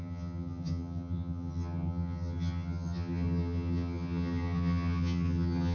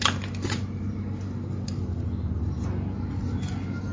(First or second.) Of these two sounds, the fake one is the first